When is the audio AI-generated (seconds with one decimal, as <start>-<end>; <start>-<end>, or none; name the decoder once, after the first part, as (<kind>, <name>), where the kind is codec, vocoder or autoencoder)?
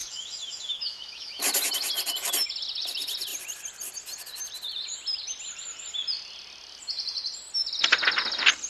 0.0-1.4 (autoencoder, DAC-VAE)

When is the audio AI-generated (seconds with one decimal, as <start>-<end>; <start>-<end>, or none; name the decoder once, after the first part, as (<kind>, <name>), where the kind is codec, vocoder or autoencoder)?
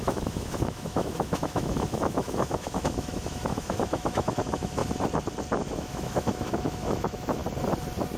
0.0-4.8 (autoencoder, DAC-VAE); 5.6-7.4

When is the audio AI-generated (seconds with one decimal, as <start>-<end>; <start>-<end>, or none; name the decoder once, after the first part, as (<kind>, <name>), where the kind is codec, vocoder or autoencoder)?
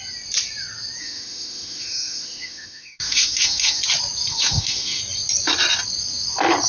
1.0-3.8 (autoencoder, DAC-VAE); 4.3-5.0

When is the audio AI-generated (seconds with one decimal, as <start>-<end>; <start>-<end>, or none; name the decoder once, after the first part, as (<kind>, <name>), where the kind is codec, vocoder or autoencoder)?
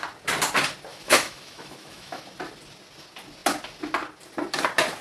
0.9-2.2 (autoencoder, DAC-VAE)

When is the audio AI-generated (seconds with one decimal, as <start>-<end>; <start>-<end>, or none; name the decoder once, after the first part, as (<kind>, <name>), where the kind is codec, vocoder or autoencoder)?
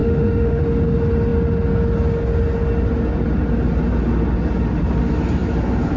0.0-0.6 (autoencoder, DAC-VAE)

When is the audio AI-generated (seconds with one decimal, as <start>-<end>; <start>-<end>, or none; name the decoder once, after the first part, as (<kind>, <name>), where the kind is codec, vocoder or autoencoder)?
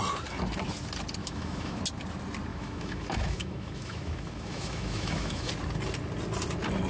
1.2-1.8 (autoencoder, DAC-VAE); 2.5-5.5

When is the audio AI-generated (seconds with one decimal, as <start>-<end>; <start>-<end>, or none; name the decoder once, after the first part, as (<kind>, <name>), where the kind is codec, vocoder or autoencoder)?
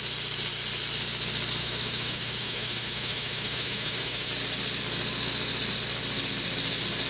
1.6-4.3 (autoencoder, DAC-VAE)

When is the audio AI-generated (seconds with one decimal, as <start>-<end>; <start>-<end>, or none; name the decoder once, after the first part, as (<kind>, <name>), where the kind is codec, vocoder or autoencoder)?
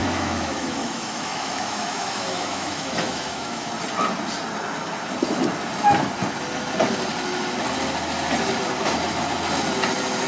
0.0-3.7 (autoencoder, DAC-VAE)